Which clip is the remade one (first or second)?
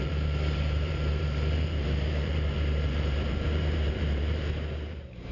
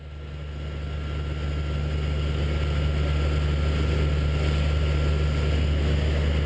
first